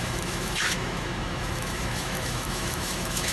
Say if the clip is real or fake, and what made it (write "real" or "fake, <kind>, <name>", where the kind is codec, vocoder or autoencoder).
fake, autoencoder, DAC-VAE